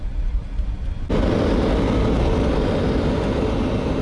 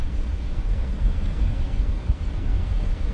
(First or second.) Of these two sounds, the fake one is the second